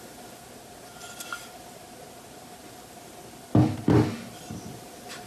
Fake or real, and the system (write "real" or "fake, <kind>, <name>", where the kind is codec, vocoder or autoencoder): real